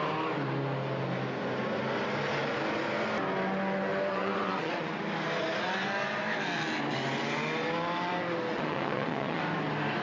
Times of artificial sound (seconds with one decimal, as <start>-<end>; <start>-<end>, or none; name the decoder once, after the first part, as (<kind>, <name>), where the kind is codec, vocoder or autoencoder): 4.1-5.0 (vocoder, WaveNeXt); 8.5-9.4